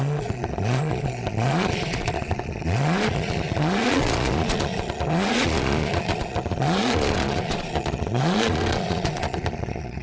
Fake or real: fake